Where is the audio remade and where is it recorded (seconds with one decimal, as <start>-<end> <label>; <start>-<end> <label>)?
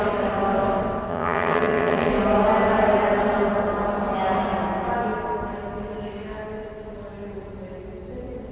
0.0-1.1 recorded; 1.1-2.1 remade; 2.1-8.5 recorded